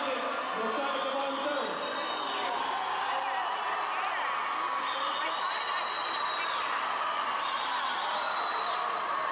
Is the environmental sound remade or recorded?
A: recorded